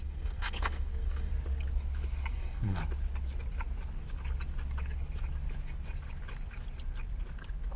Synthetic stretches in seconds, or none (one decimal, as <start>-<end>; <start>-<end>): 0.0-1.3; 2.3-2.8